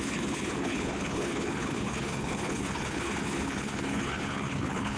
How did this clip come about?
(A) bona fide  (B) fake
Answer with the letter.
B